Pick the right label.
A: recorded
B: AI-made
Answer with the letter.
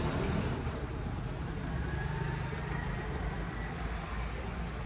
A